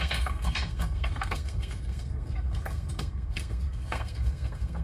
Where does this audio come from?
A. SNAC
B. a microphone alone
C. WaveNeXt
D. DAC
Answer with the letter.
A